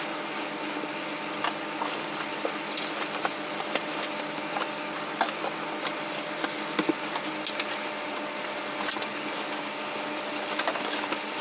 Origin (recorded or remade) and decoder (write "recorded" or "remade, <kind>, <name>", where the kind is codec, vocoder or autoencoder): recorded